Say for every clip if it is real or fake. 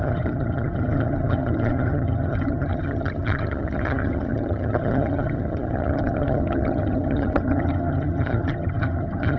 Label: fake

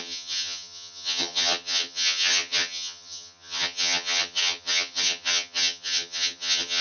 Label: fake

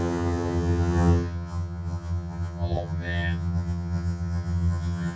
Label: fake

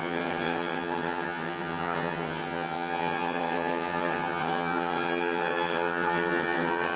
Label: fake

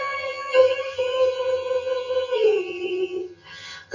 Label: fake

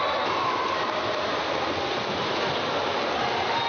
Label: real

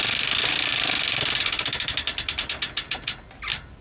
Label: real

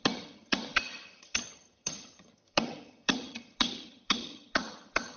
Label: fake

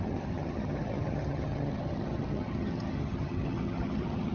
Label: fake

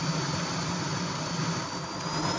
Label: real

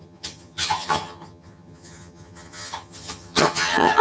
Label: fake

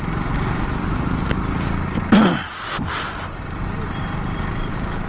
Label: real